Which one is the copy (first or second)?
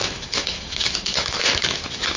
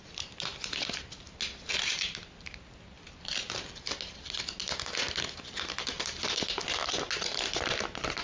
first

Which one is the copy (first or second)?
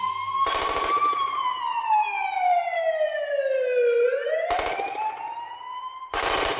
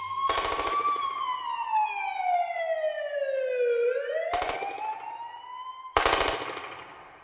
first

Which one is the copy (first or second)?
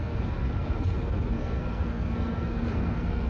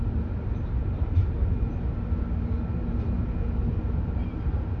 first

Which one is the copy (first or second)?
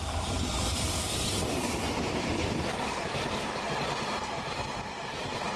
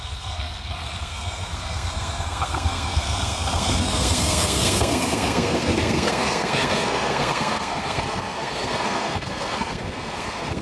second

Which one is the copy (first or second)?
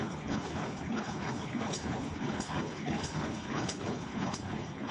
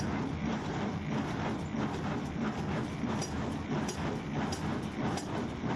first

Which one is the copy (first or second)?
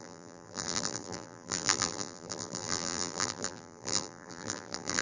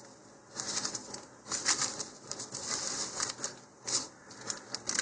first